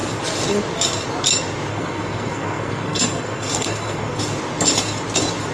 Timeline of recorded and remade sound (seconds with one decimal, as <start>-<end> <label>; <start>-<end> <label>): 0.0-1.7 recorded; 1.7-4.2 remade; 4.2-5.5 recorded